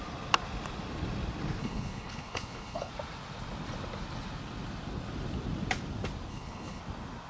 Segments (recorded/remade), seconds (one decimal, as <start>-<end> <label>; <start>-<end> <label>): 0.0-1.6 recorded; 1.6-2.9 remade; 2.9-6.3 recorded; 6.3-6.8 remade; 6.8-7.3 recorded